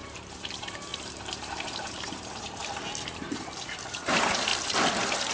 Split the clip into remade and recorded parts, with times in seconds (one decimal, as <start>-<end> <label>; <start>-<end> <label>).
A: 0.0-2.6 remade; 2.6-3.9 recorded; 3.9-4.5 remade; 4.5-5.3 recorded